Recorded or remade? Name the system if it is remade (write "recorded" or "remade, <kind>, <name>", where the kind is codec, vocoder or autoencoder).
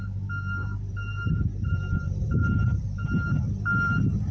remade, vocoder, BigVGAN v2